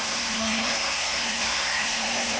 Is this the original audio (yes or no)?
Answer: no